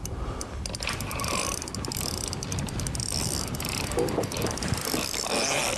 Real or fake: real